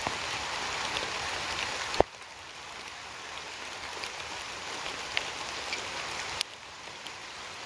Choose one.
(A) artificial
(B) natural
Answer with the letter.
B